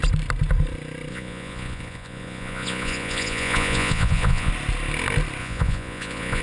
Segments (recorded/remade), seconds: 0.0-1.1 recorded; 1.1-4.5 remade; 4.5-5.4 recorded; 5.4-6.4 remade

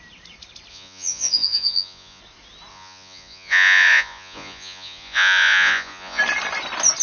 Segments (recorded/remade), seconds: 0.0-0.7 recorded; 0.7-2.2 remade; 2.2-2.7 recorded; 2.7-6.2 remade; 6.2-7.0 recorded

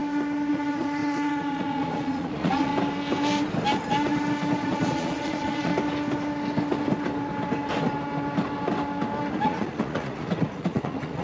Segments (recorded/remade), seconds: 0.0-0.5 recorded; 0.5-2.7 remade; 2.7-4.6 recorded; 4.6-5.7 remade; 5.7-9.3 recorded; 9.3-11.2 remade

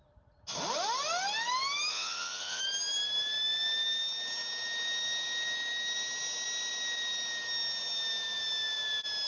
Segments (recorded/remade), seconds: 0.0-1.9 recorded; 1.9-2.6 remade; 2.6-9.3 recorded

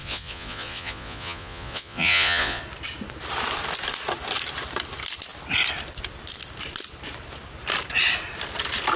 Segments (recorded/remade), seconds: 0.0-2.6 remade; 2.6-9.0 recorded